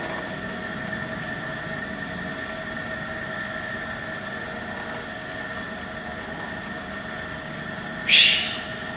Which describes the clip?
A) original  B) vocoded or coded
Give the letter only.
A